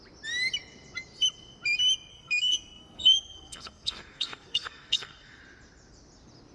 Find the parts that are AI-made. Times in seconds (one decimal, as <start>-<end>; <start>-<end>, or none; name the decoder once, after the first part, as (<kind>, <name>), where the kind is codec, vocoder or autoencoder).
2.1-5.4 (codec, SNAC)